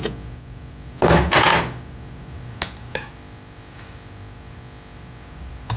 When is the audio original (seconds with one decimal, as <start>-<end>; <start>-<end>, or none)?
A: 0.0-5.8